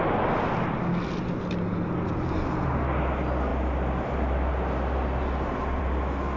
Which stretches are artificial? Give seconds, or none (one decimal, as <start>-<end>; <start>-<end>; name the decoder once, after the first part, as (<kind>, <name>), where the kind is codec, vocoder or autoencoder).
none